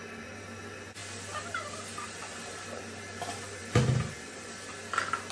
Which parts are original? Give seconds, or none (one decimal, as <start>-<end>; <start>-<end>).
0.0-5.3

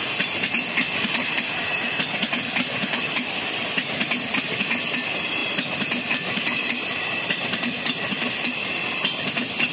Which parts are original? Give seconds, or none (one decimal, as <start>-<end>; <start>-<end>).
0.0-9.7

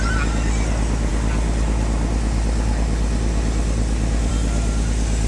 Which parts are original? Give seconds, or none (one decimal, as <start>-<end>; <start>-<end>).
0.0-5.3